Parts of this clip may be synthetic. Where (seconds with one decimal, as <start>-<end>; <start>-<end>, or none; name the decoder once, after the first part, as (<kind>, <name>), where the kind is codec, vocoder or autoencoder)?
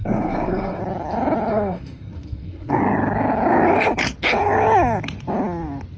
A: 0.0-0.8 (codec, SNAC); 1.5-2.8